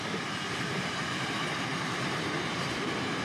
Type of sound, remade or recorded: remade